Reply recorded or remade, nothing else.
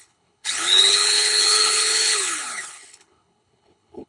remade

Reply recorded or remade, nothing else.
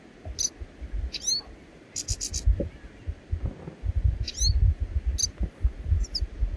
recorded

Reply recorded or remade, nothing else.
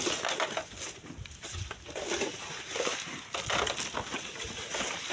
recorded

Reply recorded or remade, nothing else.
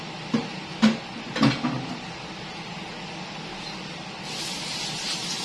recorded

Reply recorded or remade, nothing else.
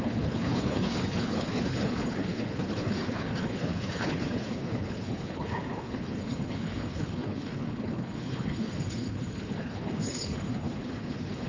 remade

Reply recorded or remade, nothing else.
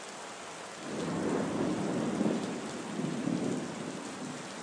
recorded